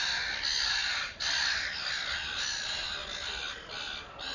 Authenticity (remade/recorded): recorded